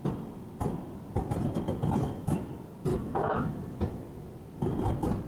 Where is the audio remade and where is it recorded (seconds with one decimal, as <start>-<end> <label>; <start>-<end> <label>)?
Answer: 0.0-2.0 recorded; 2.0-2.5 remade; 2.5-2.9 recorded; 2.9-4.0 remade; 4.0-5.3 recorded